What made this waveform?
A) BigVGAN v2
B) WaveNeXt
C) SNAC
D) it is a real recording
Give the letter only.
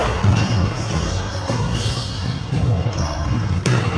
C